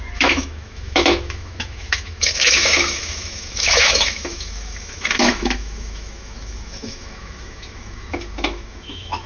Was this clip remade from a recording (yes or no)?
yes